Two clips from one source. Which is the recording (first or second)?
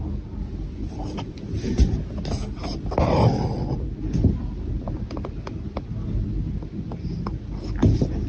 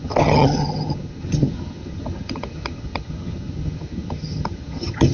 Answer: first